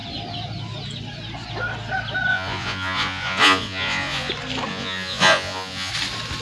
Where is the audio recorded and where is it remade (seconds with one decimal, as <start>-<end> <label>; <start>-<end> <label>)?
0.0-2.3 recorded; 2.3-4.3 remade; 4.3-4.7 recorded; 4.7-5.9 remade; 5.9-6.4 recorded